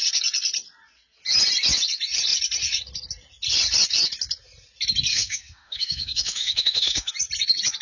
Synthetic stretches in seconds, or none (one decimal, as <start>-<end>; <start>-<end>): 5.1-7.1